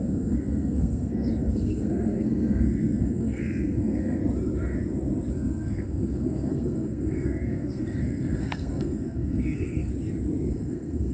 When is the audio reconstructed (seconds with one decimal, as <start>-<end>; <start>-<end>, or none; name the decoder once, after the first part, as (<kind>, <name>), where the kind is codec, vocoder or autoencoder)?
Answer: 0.0-4.2 (codec, SNAC); 5.3-9.9; 10.5-11.1